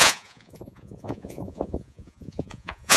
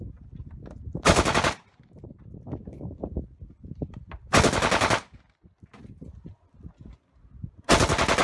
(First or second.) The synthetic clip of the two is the first